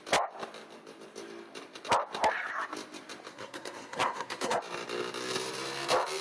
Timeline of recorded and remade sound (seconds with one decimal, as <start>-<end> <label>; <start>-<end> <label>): 0.0-3.3 recorded; 3.3-4.6 remade; 4.6-6.2 recorded